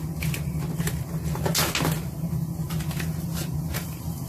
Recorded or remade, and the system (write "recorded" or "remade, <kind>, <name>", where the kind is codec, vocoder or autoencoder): recorded